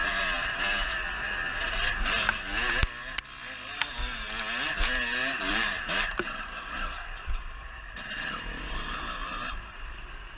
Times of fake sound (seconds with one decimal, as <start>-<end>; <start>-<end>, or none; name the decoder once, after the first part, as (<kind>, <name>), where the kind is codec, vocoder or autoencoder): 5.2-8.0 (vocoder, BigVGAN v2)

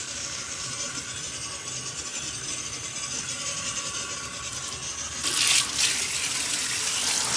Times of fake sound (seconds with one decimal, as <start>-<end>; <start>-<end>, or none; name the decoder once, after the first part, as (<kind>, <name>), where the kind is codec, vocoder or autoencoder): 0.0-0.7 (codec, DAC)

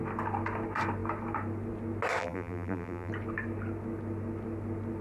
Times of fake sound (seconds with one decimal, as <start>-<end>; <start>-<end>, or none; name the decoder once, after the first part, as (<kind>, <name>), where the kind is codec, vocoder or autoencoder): 2.2-3.1 (vocoder, BigVGAN v2)

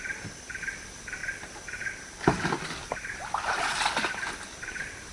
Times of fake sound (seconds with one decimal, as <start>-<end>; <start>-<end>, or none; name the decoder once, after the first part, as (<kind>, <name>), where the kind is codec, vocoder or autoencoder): none

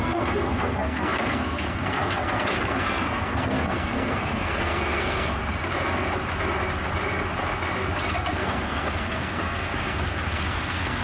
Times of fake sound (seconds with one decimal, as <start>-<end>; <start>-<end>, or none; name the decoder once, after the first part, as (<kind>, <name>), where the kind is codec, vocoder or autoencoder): 0.0-5.4 (codec, SNAC); 8.1-11.0

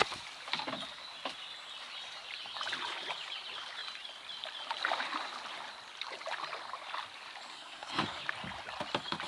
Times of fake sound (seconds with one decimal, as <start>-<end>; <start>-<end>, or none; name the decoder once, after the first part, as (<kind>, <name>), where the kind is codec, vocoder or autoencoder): 7.5-8.2 (codec, SNAC)

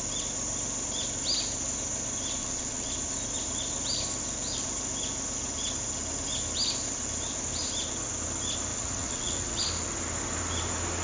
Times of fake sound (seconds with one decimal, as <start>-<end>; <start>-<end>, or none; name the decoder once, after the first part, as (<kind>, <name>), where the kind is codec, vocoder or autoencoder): 2.4-2.9 (vocoder, WaveNeXt); 8.7-9.6

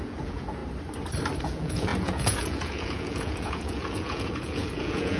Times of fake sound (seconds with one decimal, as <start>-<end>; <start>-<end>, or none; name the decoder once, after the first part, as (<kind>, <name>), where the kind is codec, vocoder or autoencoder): 0.0-0.6 (vocoder, Vocos); 1.4-5.2